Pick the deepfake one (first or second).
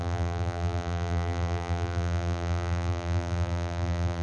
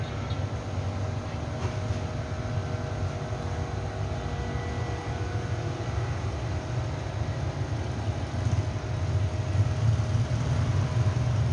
first